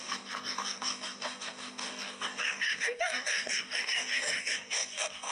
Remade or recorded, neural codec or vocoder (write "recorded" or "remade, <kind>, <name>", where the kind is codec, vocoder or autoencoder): remade, codec, DAC